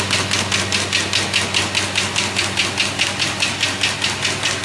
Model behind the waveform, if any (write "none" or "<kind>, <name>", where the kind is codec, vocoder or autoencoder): none